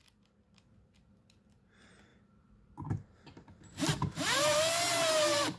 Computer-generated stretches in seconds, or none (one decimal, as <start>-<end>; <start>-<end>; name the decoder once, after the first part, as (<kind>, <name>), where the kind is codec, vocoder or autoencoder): none